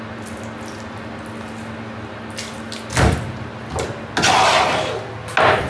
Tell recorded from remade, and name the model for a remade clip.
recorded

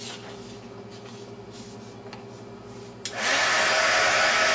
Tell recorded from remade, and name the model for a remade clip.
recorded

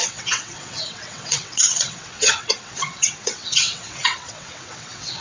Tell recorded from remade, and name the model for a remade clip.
remade, vocoder, WaveNeXt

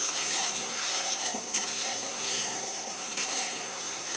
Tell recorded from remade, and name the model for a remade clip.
remade, codec, SNAC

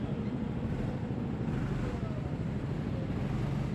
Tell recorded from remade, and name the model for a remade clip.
recorded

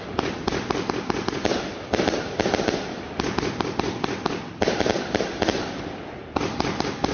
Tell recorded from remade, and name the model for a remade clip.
recorded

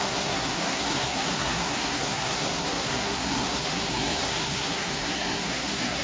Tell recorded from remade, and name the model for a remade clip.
remade, codec, SNAC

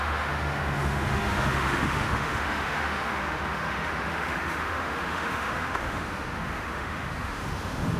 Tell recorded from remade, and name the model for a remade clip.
remade, autoencoder, DAC-VAE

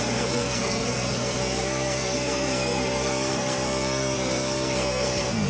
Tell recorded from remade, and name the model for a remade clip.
remade, codec, SNAC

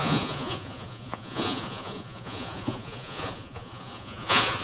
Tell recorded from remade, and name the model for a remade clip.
remade, vocoder, Vocos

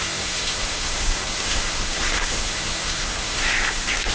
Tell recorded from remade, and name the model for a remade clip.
remade, codec, SNAC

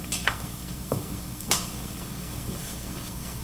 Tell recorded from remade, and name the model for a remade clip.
remade, codec, SNAC